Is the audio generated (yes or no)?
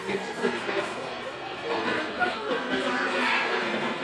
yes